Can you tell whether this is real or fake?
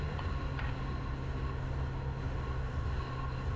real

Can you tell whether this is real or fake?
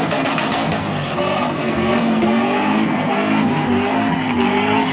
fake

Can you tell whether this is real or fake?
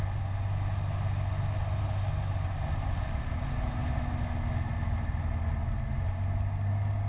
real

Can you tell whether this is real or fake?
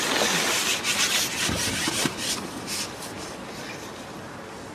real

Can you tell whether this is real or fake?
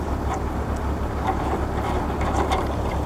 real